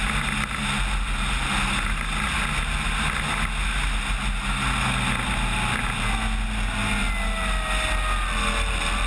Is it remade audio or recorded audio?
recorded